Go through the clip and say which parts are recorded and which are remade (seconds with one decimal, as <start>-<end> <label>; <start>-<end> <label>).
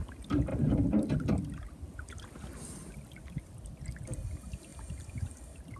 0.0-5.8 recorded